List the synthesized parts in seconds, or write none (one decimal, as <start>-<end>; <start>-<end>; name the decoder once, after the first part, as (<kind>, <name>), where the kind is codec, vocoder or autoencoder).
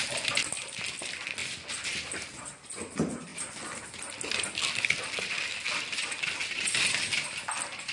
none